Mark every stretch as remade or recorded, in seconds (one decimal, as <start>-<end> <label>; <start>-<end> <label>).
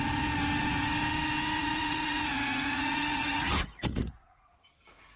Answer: 0.0-1.6 recorded; 1.6-4.7 remade; 4.7-5.2 recorded